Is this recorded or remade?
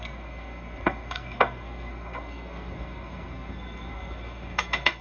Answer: remade